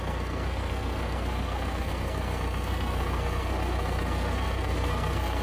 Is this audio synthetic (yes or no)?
yes